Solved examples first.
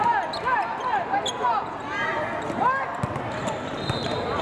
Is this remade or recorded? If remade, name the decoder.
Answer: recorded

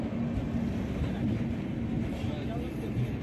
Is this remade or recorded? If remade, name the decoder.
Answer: recorded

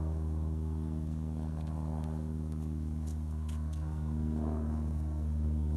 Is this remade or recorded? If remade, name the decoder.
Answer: remade, codec, SNAC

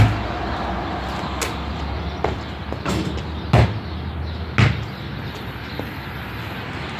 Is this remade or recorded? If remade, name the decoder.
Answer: recorded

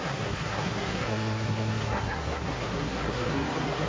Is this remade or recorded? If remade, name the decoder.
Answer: remade, codec, SNAC